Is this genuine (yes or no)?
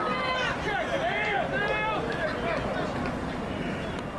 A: yes